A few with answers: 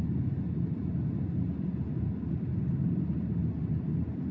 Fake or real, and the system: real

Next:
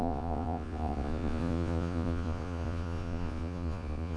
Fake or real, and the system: fake, vocoder, Vocos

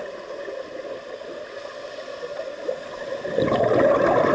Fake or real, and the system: real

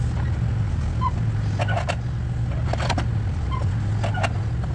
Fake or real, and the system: real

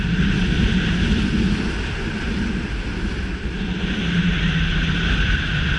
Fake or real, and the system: real